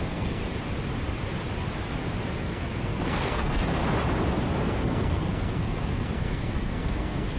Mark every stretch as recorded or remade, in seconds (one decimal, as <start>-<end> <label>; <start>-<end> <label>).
0.0-0.4 remade; 0.4-2.3 recorded; 2.3-3.8 remade; 3.8-4.6 recorded; 4.6-7.4 remade